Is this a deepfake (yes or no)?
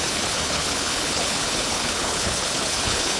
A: yes